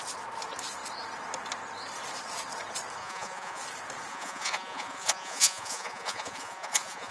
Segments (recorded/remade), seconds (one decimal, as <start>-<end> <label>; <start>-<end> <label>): 0.0-3.0 recorded; 3.0-3.6 remade; 3.6-4.1 recorded; 4.1-7.1 remade